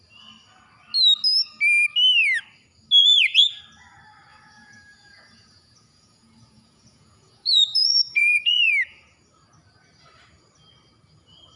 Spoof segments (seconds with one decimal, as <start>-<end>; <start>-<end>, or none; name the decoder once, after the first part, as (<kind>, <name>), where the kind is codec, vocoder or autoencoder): 3.0-3.6 (vocoder, Vocos); 4.3-8.7